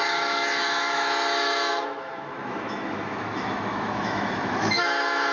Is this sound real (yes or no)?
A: no